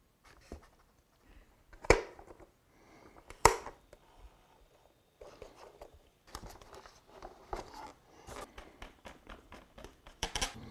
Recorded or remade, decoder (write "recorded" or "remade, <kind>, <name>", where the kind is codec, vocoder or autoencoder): remade, vocoder, BigVGAN v2